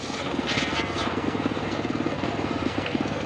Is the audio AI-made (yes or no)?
yes